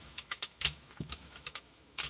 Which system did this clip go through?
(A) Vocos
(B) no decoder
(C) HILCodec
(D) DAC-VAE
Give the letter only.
D